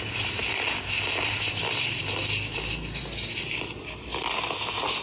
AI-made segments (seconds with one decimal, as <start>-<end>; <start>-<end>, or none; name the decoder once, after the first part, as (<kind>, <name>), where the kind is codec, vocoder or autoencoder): none